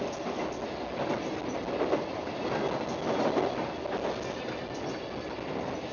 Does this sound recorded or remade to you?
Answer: recorded